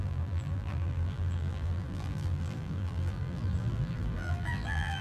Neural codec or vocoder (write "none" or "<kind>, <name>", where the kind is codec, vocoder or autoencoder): vocoder, BigVGAN v2